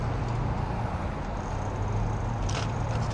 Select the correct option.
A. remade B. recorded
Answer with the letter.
B